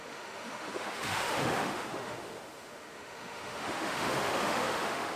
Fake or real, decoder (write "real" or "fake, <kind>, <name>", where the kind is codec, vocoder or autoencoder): fake, autoencoder, DAC-VAE